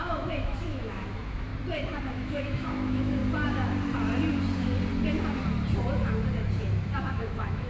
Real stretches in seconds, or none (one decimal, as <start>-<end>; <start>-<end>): 1.5-2.1; 3.2-7.0